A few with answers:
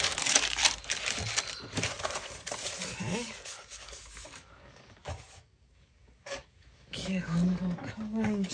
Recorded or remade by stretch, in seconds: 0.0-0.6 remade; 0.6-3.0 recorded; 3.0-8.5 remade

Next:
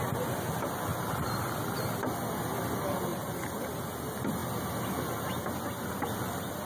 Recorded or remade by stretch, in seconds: 0.0-0.9 recorded; 0.9-1.5 remade; 1.5-3.1 recorded; 3.1-3.7 remade; 3.7-6.6 recorded